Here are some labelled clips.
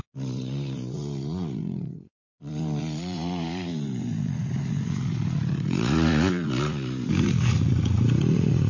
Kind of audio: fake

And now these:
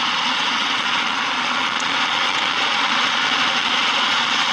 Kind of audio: fake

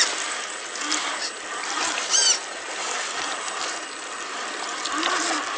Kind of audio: real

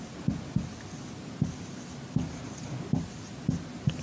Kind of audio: real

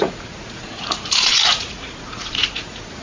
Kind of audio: fake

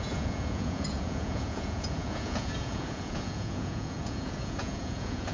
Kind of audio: fake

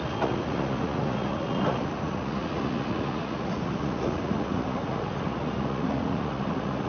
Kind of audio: fake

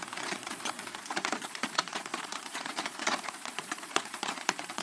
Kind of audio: fake